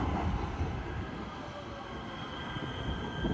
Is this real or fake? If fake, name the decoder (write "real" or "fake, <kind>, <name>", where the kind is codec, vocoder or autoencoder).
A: real